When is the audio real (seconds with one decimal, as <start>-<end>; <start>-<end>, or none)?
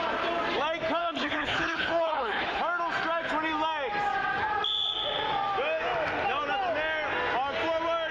0.0-1.0; 2.6-8.1